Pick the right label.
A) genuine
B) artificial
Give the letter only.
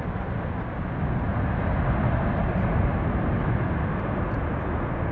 A